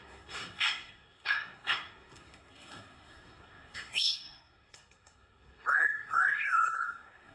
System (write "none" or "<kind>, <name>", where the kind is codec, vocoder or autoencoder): codec, SNAC